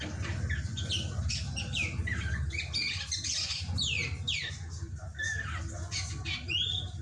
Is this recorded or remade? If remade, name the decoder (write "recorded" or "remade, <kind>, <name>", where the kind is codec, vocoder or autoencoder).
recorded